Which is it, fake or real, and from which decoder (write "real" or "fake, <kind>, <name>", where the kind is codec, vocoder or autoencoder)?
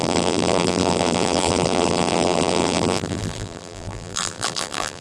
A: fake, vocoder, BigVGAN v2